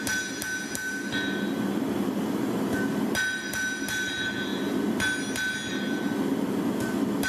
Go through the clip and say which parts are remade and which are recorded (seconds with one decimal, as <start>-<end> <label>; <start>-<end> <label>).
0.0-7.3 recorded